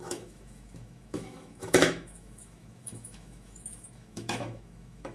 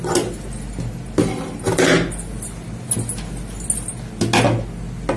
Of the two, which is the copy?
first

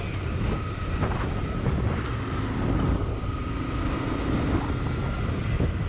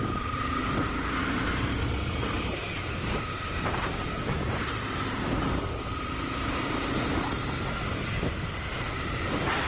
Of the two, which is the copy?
second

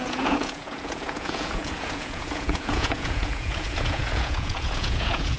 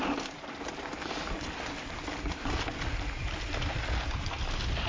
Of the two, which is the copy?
first